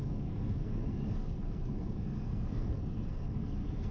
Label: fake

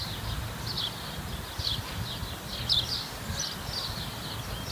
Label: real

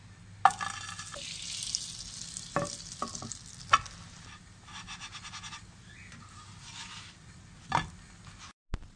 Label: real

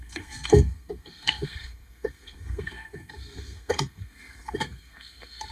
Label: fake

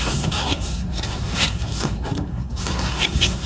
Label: fake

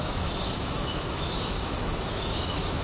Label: fake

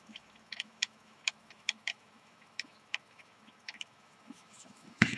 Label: fake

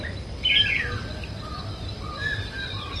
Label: real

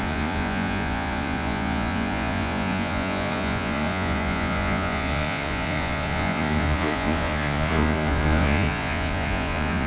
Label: fake